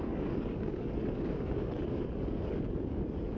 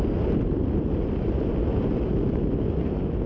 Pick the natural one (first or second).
second